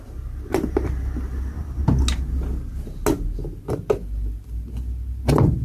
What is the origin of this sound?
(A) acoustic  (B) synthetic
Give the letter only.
A